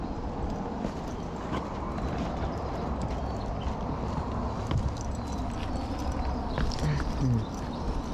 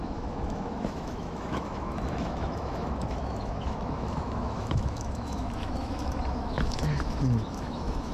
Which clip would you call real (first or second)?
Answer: first